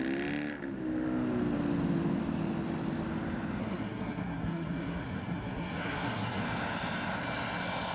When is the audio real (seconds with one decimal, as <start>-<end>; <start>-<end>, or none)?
0.0-3.6; 6.4-7.9